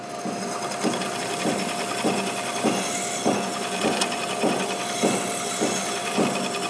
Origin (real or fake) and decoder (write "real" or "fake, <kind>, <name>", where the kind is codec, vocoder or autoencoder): real